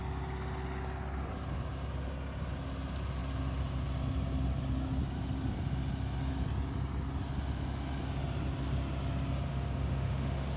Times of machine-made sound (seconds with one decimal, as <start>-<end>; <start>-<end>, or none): 9.5-10.6